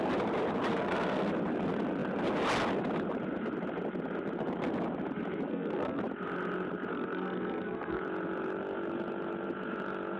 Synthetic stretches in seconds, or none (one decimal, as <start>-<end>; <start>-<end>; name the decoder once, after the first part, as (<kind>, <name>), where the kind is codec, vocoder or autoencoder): 0.7-1.3 (codec, SNAC); 5.5-6.0; 6.9-8.0